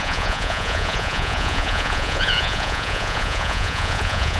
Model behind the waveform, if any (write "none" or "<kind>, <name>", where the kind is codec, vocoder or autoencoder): vocoder, Vocos